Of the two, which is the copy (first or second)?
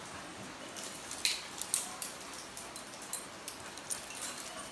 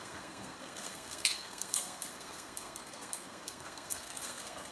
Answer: second